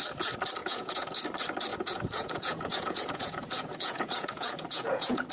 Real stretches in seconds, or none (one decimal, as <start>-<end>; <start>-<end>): 0.0-0.6; 1.2-1.7